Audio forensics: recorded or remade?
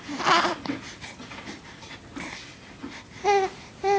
recorded